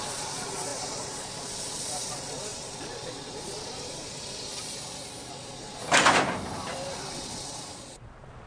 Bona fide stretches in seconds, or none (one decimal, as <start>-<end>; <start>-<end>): 4.5-5.3; 5.8-7.1